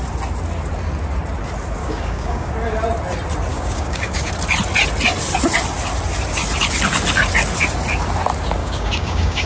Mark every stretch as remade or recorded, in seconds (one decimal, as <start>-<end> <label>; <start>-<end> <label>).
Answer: 0.0-1.8 recorded; 1.8-2.5 remade; 2.5-3.5 recorded; 3.5-4.3 remade; 4.3-8.6 recorded; 8.6-9.5 remade